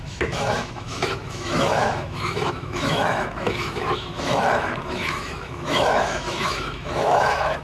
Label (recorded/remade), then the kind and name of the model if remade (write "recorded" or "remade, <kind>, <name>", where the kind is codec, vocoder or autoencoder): remade, autoencoder, DAC-VAE